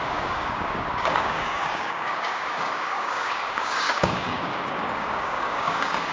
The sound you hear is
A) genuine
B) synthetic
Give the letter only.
B